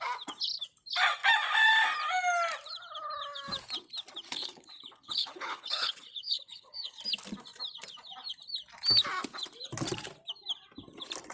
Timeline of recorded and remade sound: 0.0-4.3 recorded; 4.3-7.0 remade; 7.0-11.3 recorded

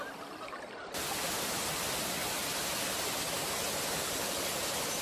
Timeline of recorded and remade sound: 0.0-5.0 recorded